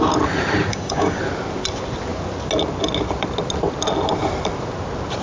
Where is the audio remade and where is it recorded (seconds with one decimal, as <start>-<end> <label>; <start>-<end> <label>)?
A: 0.0-0.7 recorded; 0.7-1.2 remade; 1.2-5.2 recorded